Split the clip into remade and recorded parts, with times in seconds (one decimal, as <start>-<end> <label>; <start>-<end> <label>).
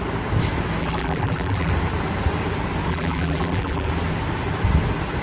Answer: 0.0-0.8 recorded; 0.8-1.7 remade; 1.7-2.9 recorded; 2.9-3.9 remade; 3.9-5.2 recorded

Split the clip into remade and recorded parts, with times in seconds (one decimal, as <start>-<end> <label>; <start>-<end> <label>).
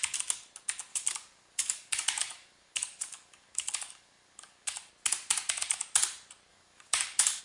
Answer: 0.0-0.9 recorded; 0.9-4.9 remade; 4.9-6.5 recorded; 6.5-7.4 remade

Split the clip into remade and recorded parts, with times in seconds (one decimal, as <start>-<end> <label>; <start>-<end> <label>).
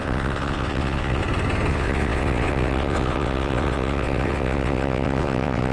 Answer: 0.0-1.2 remade; 1.2-1.7 recorded; 1.7-5.7 remade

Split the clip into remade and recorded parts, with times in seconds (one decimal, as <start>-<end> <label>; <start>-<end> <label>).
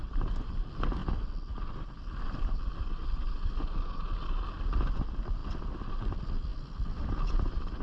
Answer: 0.0-7.8 recorded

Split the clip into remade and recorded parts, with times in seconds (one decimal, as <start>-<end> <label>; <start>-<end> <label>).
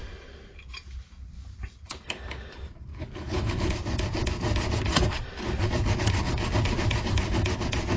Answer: 0.0-2.9 recorded; 2.9-3.7 remade; 3.7-8.0 recorded